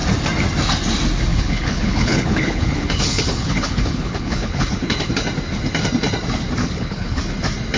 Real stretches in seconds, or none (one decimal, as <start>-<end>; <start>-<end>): 0.0-1.3; 5.1-6.6; 7.2-7.8